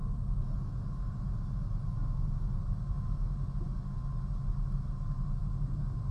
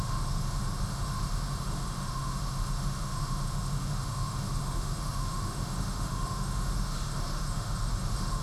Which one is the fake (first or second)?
second